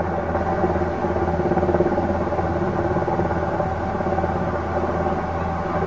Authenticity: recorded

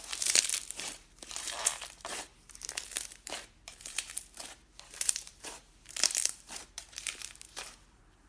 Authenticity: remade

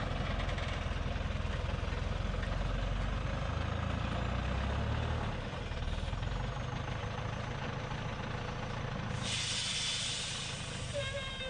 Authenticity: recorded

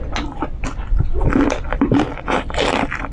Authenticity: recorded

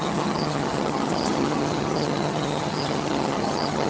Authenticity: remade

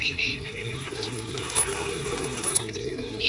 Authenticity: remade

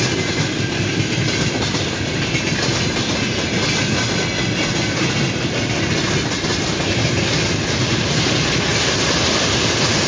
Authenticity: recorded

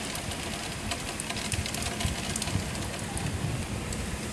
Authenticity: recorded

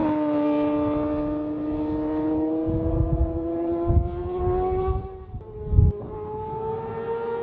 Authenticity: recorded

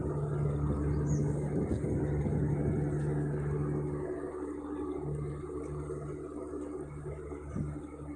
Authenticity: recorded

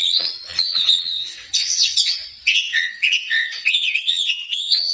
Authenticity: remade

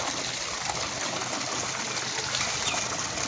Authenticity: recorded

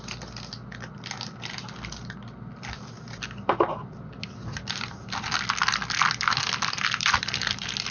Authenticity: recorded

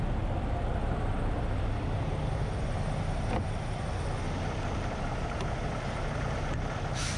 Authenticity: recorded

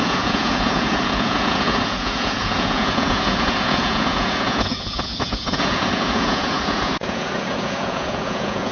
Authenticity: remade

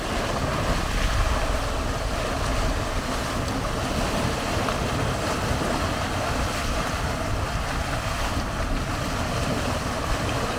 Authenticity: recorded